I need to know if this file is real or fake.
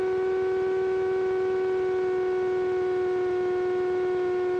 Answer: real